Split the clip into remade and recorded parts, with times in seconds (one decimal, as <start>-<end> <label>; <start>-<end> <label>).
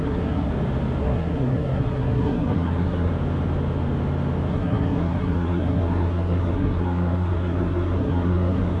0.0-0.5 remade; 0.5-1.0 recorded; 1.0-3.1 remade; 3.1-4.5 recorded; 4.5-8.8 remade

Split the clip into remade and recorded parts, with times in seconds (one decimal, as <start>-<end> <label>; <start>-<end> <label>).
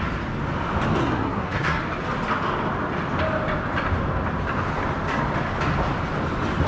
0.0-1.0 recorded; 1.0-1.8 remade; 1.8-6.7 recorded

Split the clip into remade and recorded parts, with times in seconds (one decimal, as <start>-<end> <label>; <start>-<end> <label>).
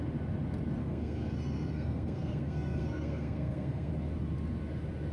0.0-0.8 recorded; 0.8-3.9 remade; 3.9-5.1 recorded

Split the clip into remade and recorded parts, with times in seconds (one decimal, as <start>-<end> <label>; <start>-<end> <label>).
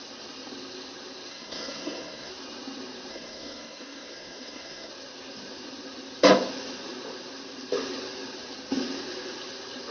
0.0-1.3 recorded; 1.3-2.3 remade; 2.3-3.1 recorded; 3.1-4.9 remade; 4.9-9.9 recorded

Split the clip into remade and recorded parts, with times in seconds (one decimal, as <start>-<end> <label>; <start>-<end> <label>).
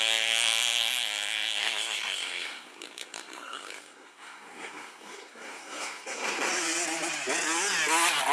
0.0-1.6 recorded; 1.6-6.5 remade; 6.5-8.3 recorded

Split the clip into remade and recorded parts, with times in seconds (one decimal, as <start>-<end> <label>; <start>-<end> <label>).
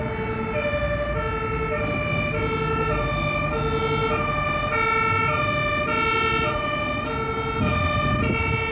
0.0-8.7 recorded